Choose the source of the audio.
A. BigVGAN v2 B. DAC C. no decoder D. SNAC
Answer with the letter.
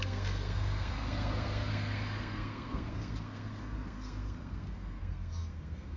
D